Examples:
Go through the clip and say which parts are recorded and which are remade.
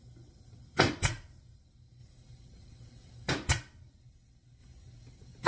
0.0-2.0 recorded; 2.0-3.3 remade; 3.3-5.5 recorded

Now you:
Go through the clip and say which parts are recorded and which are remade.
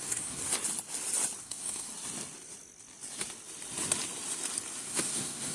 0.0-0.4 remade; 0.4-1.4 recorded; 1.4-1.9 remade; 1.9-4.8 recorded; 4.8-5.5 remade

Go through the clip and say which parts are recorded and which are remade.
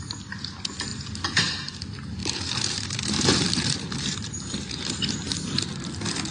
0.0-2.2 recorded; 2.2-5.0 remade; 5.0-6.3 recorded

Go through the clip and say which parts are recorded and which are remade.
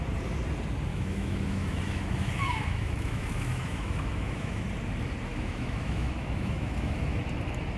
0.0-0.9 recorded; 0.9-4.6 remade; 4.6-5.3 recorded; 5.3-7.2 remade; 7.2-7.8 recorded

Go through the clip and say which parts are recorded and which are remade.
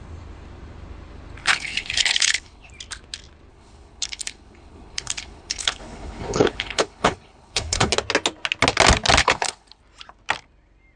0.0-1.4 recorded; 1.4-2.7 remade; 2.7-3.5 recorded; 3.5-7.9 remade; 7.9-9.2 recorded; 9.2-9.8 remade; 9.8-11.0 recorded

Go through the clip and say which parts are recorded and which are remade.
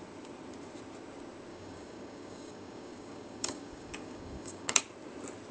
0.0-1.5 recorded; 1.5-4.8 remade; 4.8-5.5 recorded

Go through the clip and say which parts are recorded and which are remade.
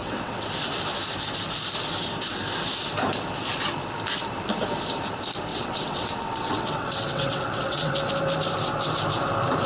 0.0-0.5 remade; 0.5-5.5 recorded; 5.5-8.1 remade; 8.1-9.7 recorded